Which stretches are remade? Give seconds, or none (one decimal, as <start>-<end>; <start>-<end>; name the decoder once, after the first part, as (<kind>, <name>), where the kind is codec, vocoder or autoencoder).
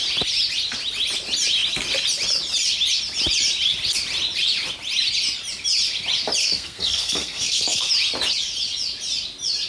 6.4-7.9 (codec, SNAC)